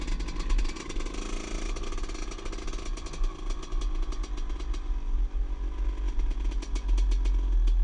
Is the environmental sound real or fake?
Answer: real